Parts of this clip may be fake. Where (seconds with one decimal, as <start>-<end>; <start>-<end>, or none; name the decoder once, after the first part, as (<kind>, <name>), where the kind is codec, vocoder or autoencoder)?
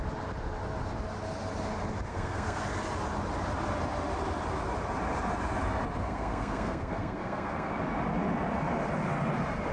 2.1-2.6 (codec, SNAC); 6.0-7.7